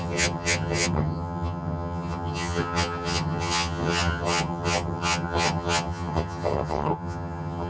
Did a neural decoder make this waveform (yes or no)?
yes